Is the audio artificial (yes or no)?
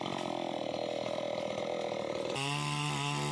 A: no